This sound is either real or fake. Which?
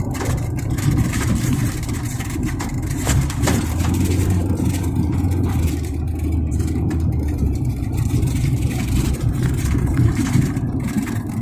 fake